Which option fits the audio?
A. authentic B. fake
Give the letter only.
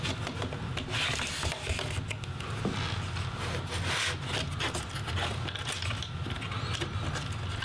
A